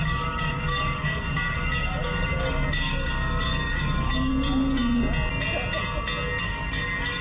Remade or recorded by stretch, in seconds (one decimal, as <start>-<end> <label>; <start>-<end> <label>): 0.0-4.3 remade; 4.3-6.4 recorded; 6.4-7.2 remade

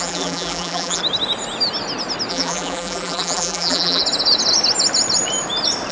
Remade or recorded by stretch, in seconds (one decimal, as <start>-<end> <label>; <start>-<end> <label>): 0.0-1.0 remade; 1.0-2.3 recorded; 2.3-4.0 remade; 4.0-5.9 recorded